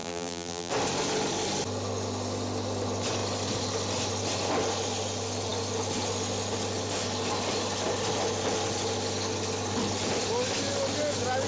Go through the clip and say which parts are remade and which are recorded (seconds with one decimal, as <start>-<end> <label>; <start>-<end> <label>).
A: 0.0-0.7 remade; 0.7-11.5 recorded